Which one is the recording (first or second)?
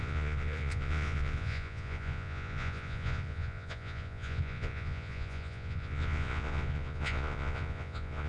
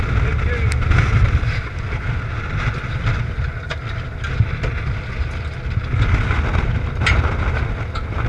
second